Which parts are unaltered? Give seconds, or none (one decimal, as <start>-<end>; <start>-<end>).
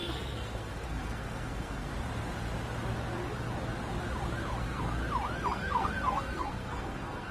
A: 1.9-4.6; 5.0-5.5